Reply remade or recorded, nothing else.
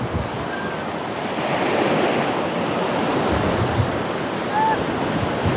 recorded